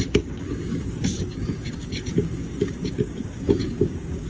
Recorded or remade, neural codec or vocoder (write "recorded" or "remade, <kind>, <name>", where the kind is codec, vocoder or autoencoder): remade, codec, DAC